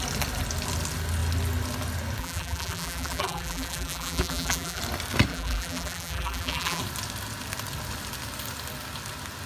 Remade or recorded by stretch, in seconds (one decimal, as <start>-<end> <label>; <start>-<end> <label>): 0.0-2.2 recorded; 2.2-4.8 remade; 4.8-5.3 recorded; 5.3-6.8 remade; 6.8-9.5 recorded